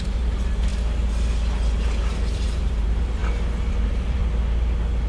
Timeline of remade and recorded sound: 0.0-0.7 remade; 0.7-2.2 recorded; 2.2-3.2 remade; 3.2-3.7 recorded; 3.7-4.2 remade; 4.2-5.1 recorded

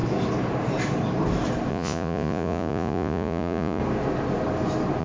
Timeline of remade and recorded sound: 0.0-1.7 recorded; 1.7-3.8 remade; 3.8-5.0 recorded